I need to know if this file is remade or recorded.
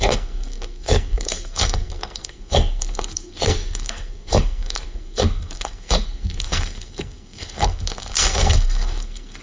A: remade